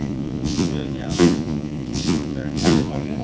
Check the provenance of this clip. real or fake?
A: fake